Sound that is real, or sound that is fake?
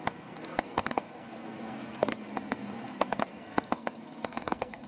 fake